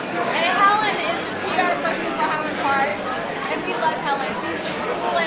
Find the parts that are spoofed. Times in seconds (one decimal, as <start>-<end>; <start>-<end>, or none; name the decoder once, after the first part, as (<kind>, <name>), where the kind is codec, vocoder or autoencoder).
none